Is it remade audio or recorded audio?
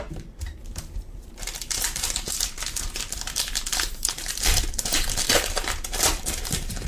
remade